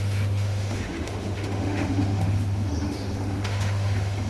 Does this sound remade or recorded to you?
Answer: remade